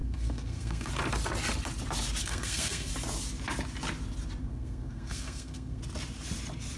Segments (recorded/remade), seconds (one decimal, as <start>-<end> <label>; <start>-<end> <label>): 0.0-0.9 remade; 0.9-2.2 recorded; 2.2-2.9 remade; 2.9-4.4 recorded; 4.4-5.8 remade; 5.8-6.8 recorded